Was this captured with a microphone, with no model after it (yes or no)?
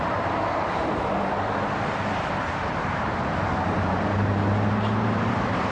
no